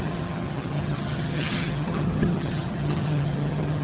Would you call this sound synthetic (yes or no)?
yes